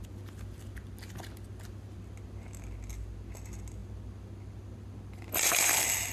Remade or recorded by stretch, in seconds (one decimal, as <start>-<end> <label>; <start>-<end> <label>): 0.0-6.1 recorded